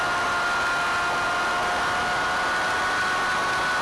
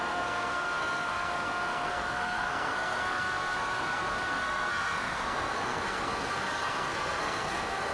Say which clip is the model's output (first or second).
second